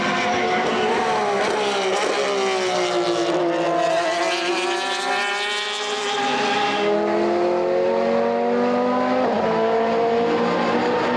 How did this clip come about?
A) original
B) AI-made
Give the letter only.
A